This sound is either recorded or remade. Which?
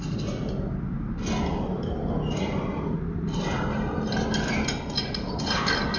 recorded